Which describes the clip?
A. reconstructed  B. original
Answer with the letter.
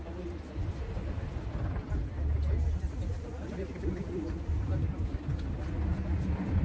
B